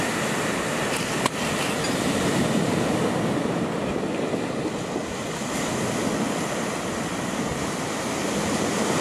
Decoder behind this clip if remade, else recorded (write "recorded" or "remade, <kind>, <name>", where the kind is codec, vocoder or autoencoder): recorded